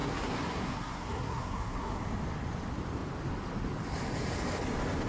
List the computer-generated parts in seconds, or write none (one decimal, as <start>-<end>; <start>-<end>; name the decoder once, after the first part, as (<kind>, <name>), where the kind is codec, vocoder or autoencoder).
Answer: 0.0-2.0 (codec, SNAC)